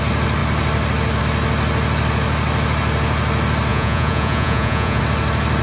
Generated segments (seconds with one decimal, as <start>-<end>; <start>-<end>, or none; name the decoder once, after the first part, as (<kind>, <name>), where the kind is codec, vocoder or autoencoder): 3.7-5.0 (vocoder, Vocos)